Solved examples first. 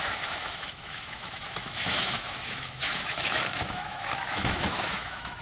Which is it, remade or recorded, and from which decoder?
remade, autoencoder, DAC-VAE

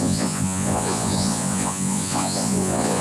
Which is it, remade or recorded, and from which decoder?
remade, vocoder, Vocos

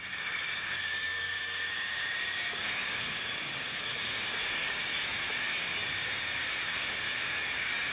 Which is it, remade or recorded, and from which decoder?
remade, codec, DAC